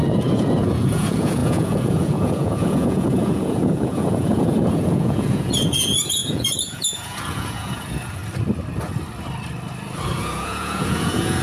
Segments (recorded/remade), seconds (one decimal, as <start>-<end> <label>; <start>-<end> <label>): 0.0-8.2 remade; 8.2-10.2 recorded; 10.2-11.4 remade